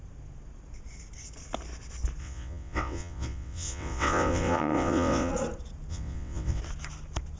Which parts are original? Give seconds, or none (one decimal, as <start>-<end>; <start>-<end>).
0.0-2.2; 5.3-5.9; 6.6-7.4